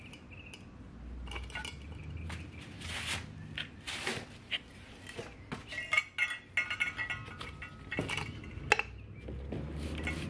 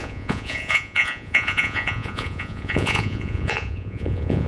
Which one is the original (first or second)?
first